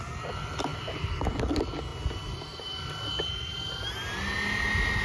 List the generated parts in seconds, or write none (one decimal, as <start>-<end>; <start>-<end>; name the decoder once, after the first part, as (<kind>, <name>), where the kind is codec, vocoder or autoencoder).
0.7-1.4 (vocoder, BigVGAN v2)